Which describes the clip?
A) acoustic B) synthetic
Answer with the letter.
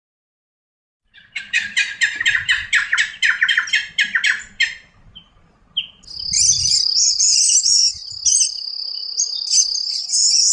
A